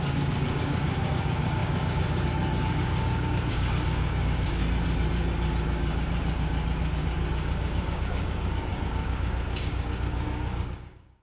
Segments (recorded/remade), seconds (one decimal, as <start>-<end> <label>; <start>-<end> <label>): 0.0-4.6 remade; 4.6-6.9 recorded; 6.9-11.2 remade